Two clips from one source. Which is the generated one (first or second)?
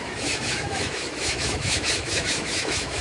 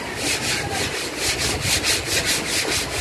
first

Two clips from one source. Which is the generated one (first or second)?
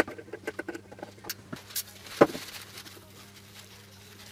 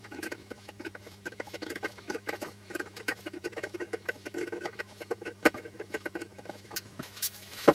second